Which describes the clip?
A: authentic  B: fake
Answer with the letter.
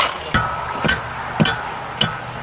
A